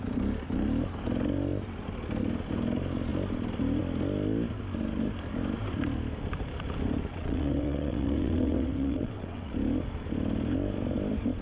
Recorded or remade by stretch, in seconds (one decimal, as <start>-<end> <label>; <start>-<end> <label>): 0.0-7.1 recorded; 7.1-9.5 remade; 9.5-11.4 recorded